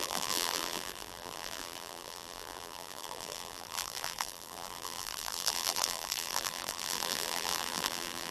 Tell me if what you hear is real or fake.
fake